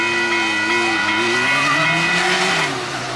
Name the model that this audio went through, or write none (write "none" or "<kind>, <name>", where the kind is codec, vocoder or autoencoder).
none